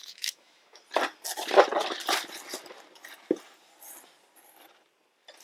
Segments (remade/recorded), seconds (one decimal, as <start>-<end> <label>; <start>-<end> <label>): 0.0-0.8 remade; 0.8-5.4 recorded

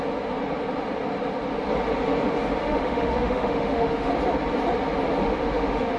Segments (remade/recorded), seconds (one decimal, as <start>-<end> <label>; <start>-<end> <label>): 0.0-2.6 recorded; 2.6-4.1 remade; 4.1-5.2 recorded; 5.2-6.0 remade

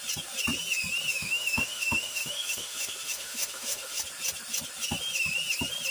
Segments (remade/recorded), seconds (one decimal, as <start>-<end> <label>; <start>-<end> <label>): 0.0-1.1 recorded; 1.1-4.0 remade; 4.0-5.9 recorded

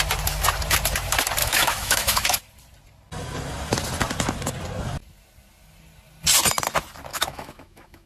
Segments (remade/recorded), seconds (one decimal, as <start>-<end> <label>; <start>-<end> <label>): 0.0-1.4 recorded; 1.4-2.4 remade; 2.4-7.1 recorded; 7.1-8.1 remade

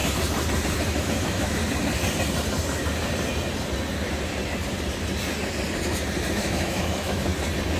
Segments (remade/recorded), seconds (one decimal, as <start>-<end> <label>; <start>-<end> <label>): 0.0-1.0 recorded; 1.0-1.6 remade; 1.6-6.3 recorded; 6.3-7.3 remade; 7.3-7.8 recorded